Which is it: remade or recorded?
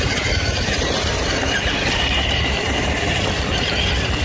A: recorded